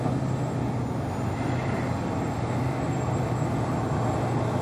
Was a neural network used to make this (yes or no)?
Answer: no